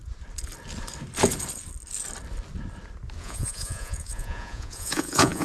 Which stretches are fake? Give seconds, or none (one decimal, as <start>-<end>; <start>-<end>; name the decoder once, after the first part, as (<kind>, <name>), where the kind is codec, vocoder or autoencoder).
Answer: 3.2-5.4 (vocoder, Vocos)